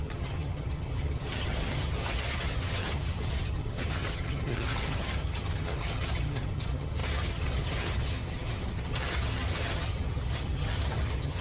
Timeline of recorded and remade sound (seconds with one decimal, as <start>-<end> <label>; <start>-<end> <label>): 0.0-11.4 remade